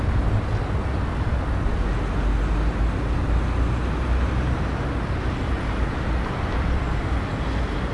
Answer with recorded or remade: recorded